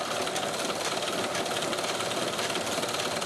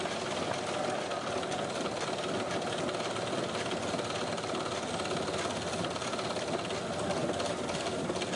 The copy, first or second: first